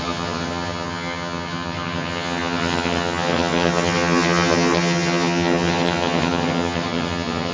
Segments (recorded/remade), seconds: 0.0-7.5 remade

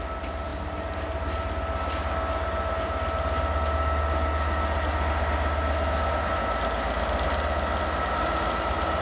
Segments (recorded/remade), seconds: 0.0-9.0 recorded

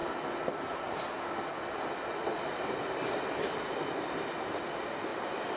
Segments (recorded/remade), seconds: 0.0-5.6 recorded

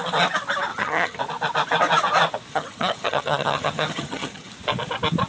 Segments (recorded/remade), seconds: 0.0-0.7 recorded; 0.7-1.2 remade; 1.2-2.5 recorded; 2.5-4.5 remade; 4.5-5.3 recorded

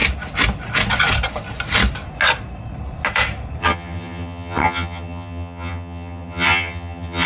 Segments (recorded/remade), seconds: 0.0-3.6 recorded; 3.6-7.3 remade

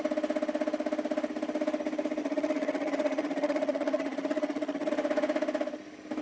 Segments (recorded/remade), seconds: 0.0-2.2 recorded; 2.2-4.9 remade; 4.9-6.2 recorded

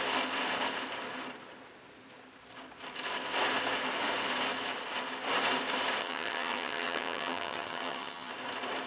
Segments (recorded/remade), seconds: 0.0-6.0 recorded; 6.0-8.3 remade; 8.3-8.9 recorded